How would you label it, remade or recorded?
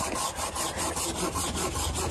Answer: recorded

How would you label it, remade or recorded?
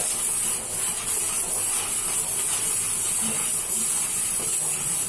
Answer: recorded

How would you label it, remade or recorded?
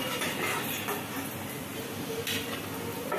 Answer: recorded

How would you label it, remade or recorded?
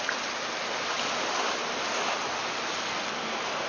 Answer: recorded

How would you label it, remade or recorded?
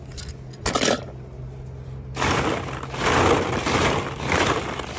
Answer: recorded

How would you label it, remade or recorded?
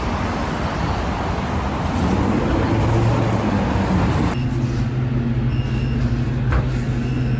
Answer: recorded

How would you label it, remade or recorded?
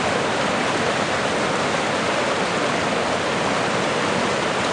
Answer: recorded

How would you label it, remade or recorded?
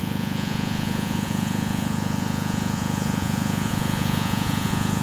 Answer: remade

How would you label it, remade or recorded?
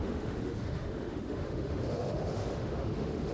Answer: remade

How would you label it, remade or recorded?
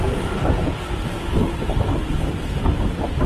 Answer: recorded